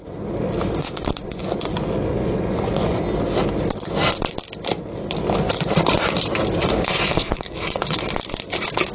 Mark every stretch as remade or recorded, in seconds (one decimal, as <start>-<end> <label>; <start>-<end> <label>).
0.0-0.8 recorded; 0.8-1.4 remade; 1.4-2.1 recorded; 2.1-3.0 remade; 3.0-6.6 recorded; 6.6-8.0 remade; 8.0-8.9 recorded